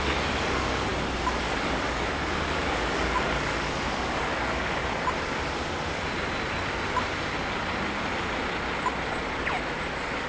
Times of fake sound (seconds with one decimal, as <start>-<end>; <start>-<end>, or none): 0.0-0.9; 1.4-4.8; 9.9-10.3